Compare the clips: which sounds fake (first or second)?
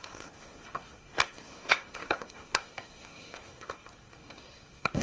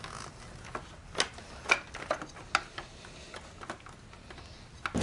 first